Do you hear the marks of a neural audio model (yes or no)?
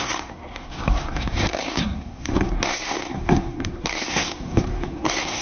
yes